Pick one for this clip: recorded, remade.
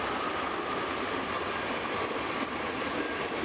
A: recorded